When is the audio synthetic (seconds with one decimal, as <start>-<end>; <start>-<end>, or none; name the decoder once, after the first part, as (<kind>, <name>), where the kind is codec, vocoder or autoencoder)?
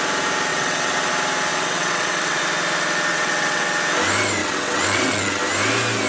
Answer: 0.5-1.1 (vocoder, WaveNeXt); 1.5-2.4; 3.1-3.7; 4.4-5.4